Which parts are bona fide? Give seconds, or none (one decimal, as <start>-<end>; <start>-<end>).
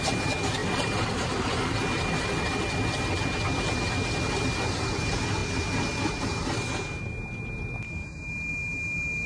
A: 0.0-9.3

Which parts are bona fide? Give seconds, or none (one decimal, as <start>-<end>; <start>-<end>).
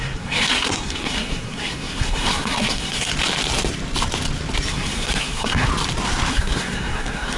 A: 3.1-4.7; 5.7-6.3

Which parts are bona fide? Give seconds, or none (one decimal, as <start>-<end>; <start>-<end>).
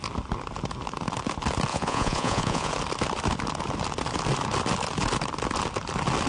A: 0.0-1.7; 2.7-6.3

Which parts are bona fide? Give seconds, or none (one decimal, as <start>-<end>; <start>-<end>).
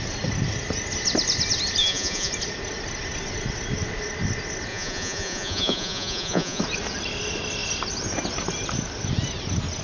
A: 0.0-1.8; 2.3-4.7; 6.6-9.8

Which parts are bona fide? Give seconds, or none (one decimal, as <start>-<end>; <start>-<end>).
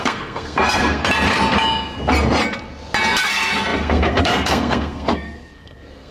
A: 1.0-3.2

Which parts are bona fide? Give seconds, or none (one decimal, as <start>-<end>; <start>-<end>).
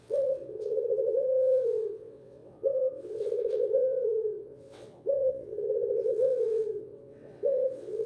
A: none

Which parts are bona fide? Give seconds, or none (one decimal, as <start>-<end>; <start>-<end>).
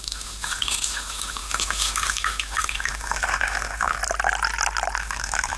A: 4.0-5.0